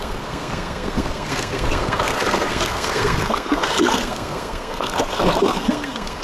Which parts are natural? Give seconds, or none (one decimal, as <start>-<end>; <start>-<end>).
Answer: none